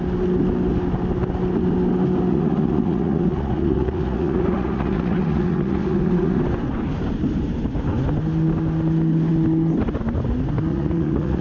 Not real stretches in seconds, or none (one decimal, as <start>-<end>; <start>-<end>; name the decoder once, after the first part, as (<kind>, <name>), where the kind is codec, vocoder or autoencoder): 2.3-6.4 (vocoder, Vocos); 10.7-11.4